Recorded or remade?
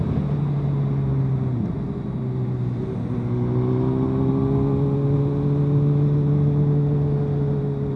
recorded